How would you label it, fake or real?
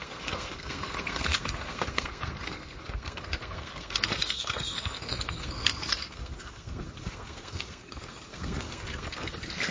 fake